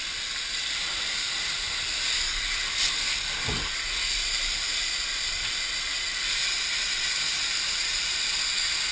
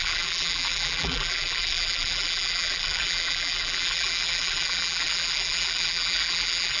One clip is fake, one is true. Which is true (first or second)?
first